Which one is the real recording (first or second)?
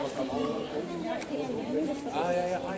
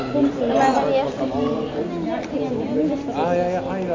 second